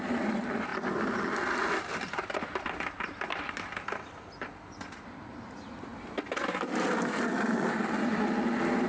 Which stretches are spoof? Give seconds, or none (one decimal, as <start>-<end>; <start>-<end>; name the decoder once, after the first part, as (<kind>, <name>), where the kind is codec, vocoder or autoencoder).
none

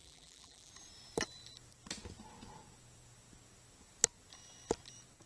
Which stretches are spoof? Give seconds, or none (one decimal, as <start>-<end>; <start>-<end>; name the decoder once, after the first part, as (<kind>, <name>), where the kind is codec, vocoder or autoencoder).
0.0-0.7 (vocoder, BigVGAN v2)

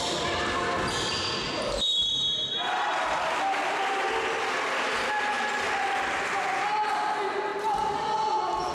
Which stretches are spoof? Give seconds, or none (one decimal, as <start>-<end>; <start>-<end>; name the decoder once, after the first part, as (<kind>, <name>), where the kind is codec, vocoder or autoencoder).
none

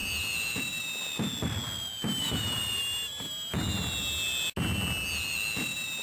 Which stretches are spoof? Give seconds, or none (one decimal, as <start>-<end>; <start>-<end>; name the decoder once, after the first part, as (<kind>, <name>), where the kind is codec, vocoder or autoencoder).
0.0-0.6 (vocoder, Vocos); 2.2-2.8

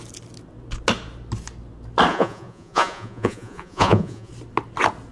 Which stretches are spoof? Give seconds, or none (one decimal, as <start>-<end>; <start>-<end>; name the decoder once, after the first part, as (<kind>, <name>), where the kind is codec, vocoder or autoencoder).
2.1-4.3 (vocoder, Vocos)

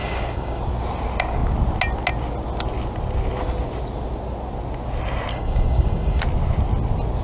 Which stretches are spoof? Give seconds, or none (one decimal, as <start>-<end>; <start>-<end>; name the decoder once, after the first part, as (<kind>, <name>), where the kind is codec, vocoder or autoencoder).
0.0-0.6 (codec, DAC); 5.3-6.2

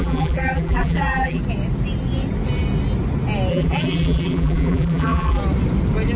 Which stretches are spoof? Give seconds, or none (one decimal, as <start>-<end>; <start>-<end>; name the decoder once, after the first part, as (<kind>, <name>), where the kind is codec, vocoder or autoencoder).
0.0-1.4 (vocoder, BigVGAN v2); 3.5-5.4

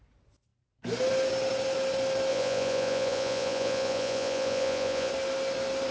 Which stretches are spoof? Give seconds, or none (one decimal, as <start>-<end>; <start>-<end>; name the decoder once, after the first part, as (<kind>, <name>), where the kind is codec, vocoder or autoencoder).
2.3-5.1 (vocoder, Vocos)